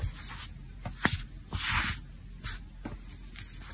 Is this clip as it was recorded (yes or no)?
yes